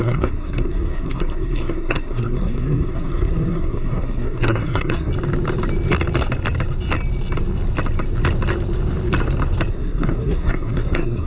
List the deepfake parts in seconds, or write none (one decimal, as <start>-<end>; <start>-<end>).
0.0-5.1; 9.7-11.3